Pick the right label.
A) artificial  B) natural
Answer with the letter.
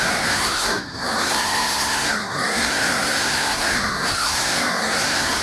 A